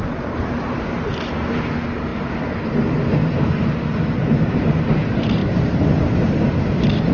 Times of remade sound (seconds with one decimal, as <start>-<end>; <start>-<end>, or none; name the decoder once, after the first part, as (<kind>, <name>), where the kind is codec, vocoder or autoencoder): 3.2-3.8 (vocoder, BigVGAN v2); 5.4-6.4